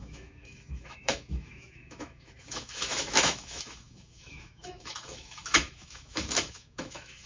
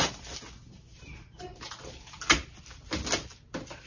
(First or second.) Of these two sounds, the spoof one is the first